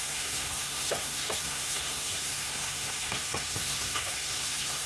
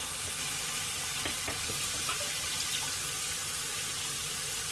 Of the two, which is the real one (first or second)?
second